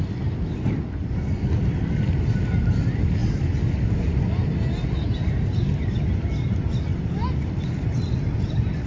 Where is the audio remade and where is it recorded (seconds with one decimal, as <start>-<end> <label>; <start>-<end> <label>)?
0.0-8.9 recorded